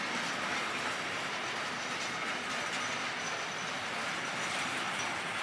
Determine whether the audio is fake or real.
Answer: real